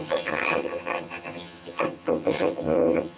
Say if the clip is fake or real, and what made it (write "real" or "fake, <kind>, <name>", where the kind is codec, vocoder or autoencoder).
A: fake, vocoder, HiFi-GAN